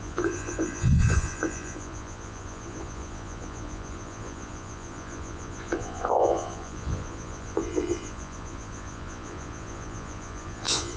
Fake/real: fake